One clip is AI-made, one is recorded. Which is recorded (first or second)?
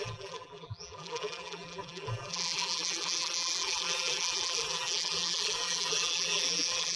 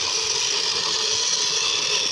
second